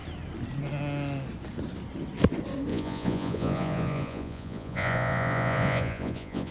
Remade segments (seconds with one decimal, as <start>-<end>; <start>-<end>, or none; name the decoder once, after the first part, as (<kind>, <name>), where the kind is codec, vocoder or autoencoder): 2.7-6.5 (vocoder, Vocos)